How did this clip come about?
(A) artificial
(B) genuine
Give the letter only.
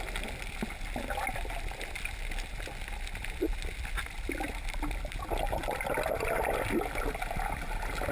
B